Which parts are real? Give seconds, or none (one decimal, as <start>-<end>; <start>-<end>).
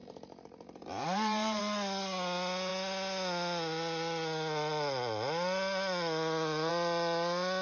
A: 1.6-7.6